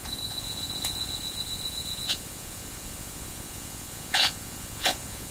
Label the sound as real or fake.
fake